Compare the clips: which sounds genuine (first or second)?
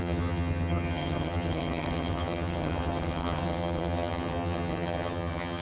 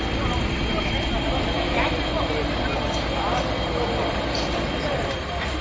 second